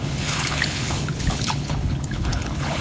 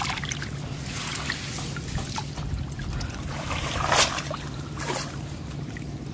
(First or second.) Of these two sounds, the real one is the second